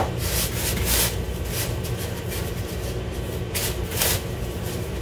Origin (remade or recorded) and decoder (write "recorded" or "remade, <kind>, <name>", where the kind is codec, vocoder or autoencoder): recorded